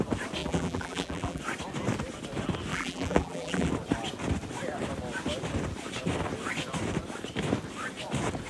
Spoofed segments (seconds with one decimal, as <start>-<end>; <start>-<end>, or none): 0.4-1.4; 2.7-3.7